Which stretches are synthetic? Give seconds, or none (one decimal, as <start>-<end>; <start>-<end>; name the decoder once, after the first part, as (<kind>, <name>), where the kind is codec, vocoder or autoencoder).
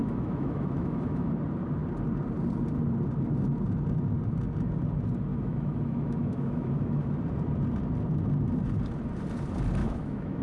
0.0-1.3 (autoencoder, DAC-VAE); 5.3-7.1; 9.8-10.4